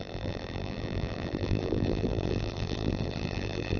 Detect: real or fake fake